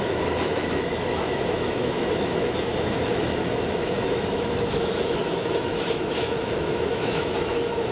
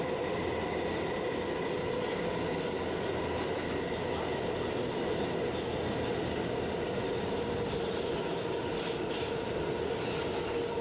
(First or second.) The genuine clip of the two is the second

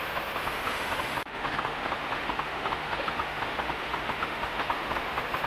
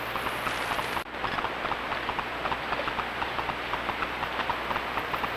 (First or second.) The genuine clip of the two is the second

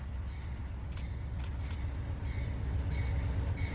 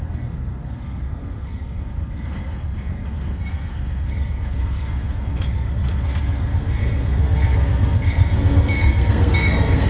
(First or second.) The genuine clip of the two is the first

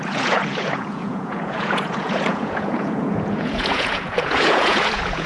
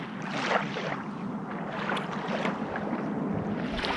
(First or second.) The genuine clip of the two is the second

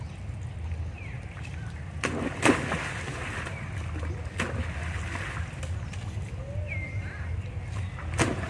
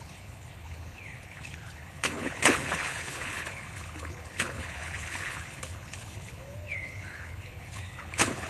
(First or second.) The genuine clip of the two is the first